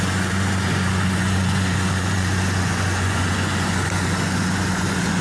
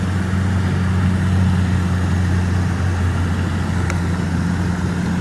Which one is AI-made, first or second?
first